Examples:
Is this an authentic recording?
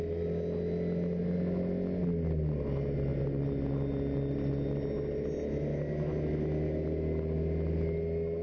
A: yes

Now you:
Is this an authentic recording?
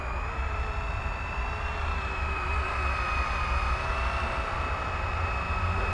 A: yes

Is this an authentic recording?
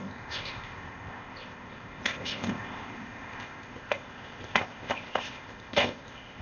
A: no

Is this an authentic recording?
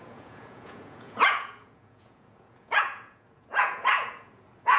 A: no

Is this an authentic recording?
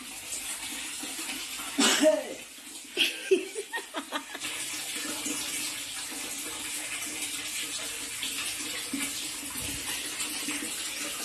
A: yes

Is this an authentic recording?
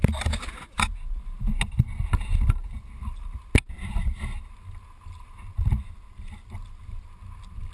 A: yes